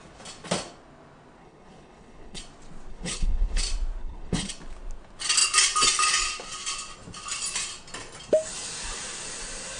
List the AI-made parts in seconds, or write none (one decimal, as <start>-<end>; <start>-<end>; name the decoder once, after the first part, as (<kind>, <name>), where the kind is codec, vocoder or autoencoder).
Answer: 1.4-2.4 (codec, HILCodec); 2.9-3.6; 4.0-4.5